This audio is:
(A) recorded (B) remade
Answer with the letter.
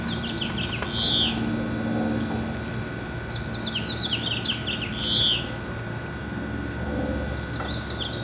A